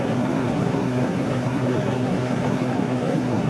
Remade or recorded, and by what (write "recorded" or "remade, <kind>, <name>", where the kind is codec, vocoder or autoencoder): remade, codec, SNAC